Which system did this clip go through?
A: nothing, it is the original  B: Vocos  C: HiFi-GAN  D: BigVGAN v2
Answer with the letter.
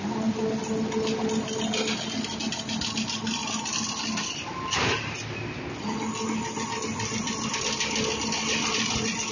A